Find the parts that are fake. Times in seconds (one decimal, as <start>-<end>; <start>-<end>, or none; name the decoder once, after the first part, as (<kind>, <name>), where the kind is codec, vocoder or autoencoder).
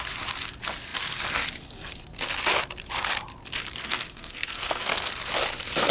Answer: 3.8-5.1 (codec, SNAC)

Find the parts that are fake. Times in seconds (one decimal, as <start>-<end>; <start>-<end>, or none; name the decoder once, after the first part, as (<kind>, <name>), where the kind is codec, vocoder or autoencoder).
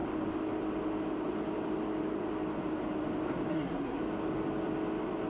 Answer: 3.5-4.0 (codec, SNAC)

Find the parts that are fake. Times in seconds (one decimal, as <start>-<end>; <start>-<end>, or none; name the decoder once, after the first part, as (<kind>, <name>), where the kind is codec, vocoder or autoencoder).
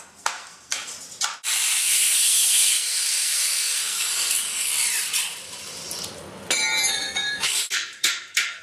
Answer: 0.0-0.9 (codec, SNAC); 1.8-4.7; 6.9-8.6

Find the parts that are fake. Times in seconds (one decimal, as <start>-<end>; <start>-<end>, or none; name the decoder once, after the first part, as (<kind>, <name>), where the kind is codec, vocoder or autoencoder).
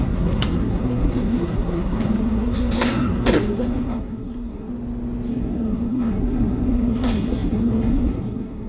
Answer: 0.0-4.7 (codec, SNAC); 5.3-8.7